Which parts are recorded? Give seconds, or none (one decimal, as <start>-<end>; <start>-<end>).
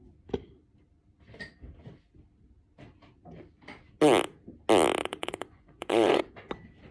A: 0.0-5.0; 6.2-6.9